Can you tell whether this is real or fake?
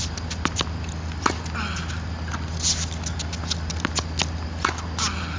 real